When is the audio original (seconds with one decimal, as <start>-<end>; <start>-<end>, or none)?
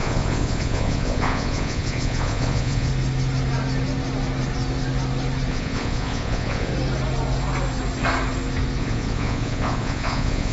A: 2.9-5.5; 6.7-8.8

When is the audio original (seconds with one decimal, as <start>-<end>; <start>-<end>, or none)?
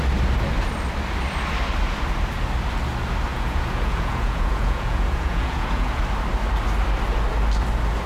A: 0.0-3.3; 6.0-8.1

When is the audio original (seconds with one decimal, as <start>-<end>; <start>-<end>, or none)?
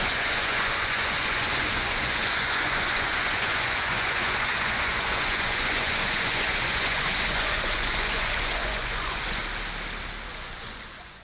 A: 9.4-10.3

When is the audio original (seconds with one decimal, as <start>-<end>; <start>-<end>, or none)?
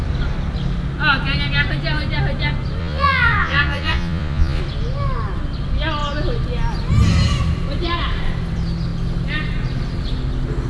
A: 0.0-2.8; 4.6-10.7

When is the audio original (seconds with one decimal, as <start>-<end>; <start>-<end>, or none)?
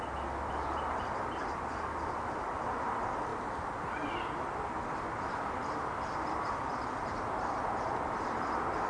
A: 0.0-8.9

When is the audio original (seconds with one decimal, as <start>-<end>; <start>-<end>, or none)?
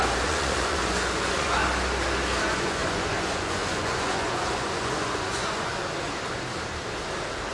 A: 1.6-2.4; 5.7-7.5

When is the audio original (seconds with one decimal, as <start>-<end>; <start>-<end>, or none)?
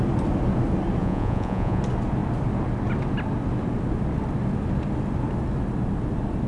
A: 0.0-1.0; 1.8-6.5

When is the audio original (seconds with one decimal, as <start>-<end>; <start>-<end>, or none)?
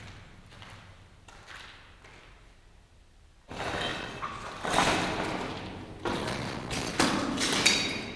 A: 0.0-3.9; 4.5-6.2; 6.9-8.2